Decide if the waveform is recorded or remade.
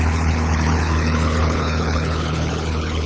remade